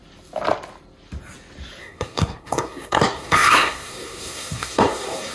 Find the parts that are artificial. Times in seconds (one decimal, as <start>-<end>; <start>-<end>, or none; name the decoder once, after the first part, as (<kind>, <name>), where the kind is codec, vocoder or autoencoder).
1.8-5.3 (codec, SNAC)